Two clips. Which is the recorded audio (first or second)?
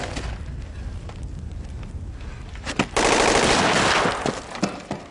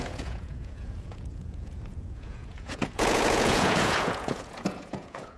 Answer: first